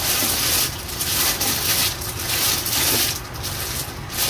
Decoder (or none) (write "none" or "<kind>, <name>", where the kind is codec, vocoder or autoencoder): none